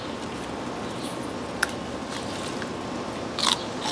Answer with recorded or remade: recorded